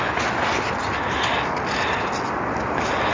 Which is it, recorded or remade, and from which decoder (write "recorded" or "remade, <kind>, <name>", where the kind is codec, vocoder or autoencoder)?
recorded